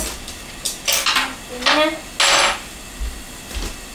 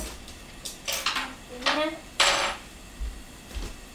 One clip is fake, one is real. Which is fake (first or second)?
second